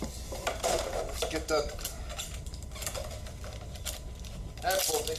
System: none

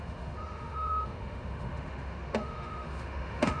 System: autoencoder, DAC-VAE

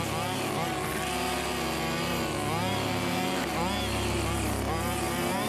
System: none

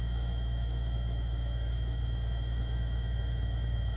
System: autoencoder, DAC-VAE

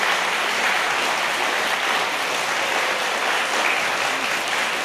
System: none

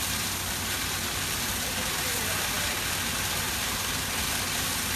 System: none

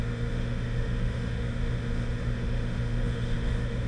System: autoencoder, DAC-VAE